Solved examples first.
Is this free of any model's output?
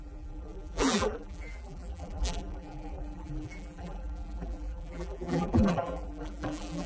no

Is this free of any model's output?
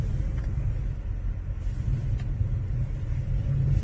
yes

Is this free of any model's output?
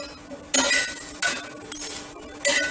yes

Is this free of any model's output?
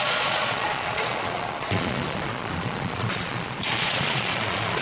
no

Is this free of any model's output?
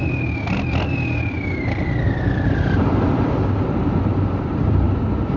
no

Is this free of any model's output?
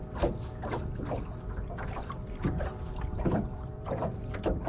yes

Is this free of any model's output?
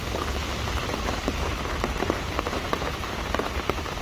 no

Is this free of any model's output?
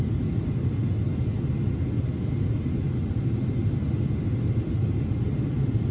yes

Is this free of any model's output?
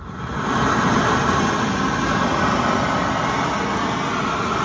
yes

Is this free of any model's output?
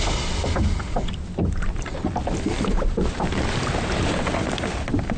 yes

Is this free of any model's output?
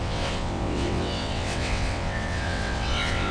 no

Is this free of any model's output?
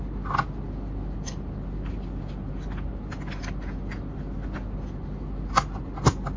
yes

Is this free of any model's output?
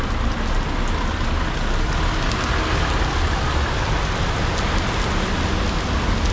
yes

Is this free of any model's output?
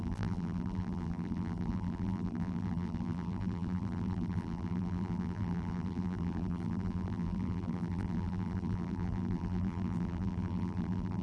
no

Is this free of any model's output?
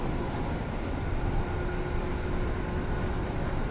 yes